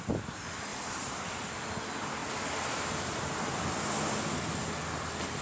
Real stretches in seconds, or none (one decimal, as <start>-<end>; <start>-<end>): 0.0-0.7; 1.7-5.4